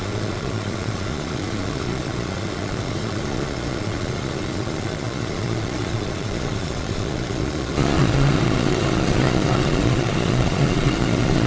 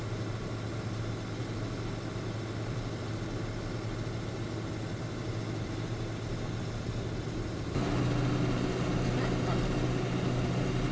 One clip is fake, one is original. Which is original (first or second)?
second